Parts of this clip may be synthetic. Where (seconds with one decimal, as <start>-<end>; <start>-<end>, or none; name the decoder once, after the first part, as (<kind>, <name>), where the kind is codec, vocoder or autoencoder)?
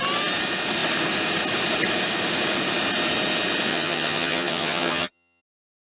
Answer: 3.7-5.4 (vocoder, HiFi-GAN)